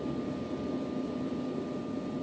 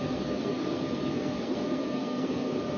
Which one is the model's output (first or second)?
second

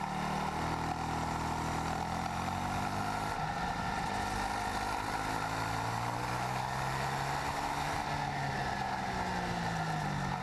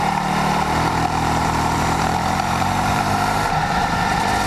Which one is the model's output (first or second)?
second